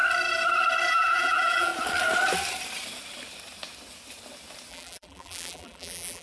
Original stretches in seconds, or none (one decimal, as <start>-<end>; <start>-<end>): 0.0-0.9; 1.7-4.7